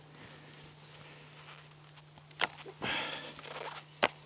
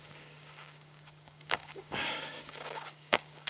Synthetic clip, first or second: second